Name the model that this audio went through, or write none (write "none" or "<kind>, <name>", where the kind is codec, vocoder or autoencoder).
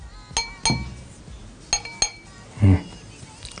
none